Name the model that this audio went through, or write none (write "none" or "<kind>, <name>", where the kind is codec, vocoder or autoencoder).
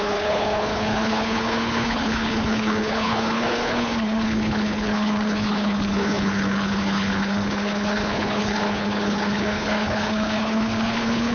codec, HILCodec